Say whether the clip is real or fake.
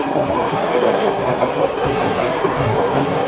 fake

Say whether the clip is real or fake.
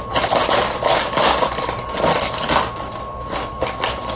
real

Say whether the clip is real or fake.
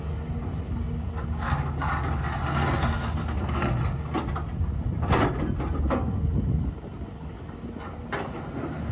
real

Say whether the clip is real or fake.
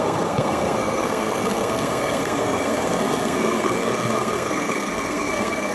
fake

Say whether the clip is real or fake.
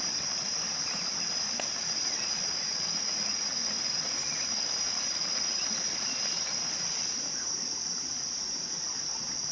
fake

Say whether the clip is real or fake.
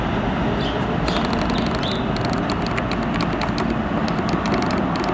real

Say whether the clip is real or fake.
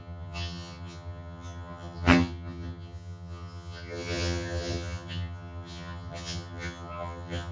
fake